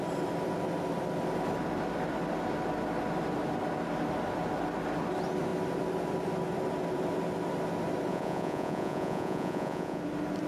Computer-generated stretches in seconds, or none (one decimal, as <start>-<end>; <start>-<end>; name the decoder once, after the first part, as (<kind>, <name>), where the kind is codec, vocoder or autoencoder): 8.1-10.0 (vocoder, Vocos)